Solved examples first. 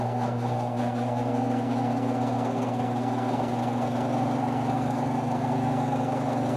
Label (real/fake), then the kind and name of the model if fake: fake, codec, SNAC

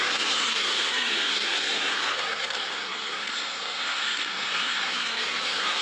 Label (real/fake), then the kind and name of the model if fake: fake, codec, SNAC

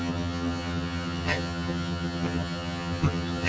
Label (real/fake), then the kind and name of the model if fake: fake, vocoder, HiFi-GAN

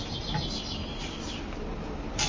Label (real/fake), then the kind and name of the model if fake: real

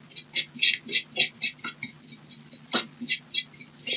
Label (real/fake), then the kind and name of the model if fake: real